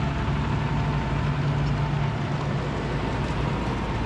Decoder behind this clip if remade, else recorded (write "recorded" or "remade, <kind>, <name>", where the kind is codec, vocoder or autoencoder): recorded